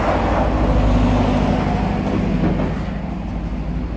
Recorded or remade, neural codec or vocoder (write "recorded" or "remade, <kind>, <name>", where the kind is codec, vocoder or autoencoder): recorded